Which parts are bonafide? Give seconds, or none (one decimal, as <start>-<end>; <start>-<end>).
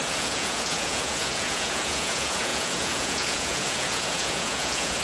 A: none